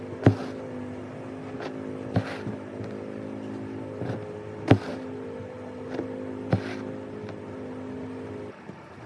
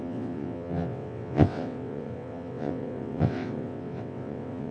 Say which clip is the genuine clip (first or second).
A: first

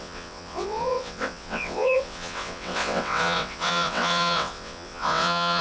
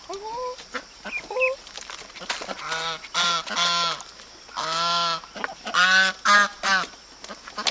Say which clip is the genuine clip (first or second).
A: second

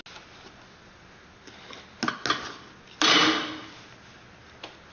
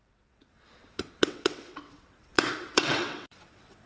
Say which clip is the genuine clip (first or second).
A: first